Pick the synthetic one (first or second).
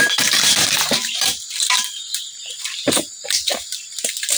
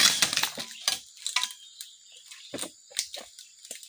first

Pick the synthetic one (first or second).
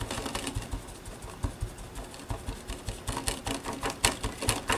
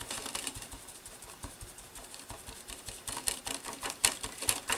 second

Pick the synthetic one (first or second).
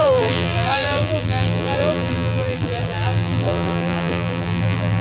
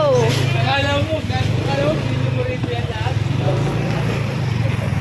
first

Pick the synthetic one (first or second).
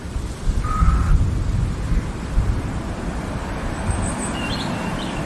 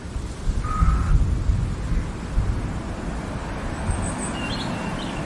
first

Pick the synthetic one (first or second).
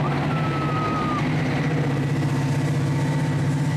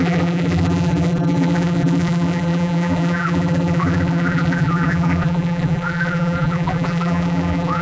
second